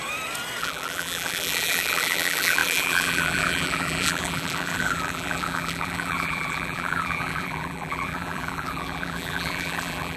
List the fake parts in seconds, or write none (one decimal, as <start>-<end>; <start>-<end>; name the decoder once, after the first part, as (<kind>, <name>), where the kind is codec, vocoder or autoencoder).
0.6-10.2 (vocoder, BigVGAN v2)